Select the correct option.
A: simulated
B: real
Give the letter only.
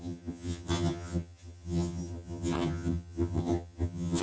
A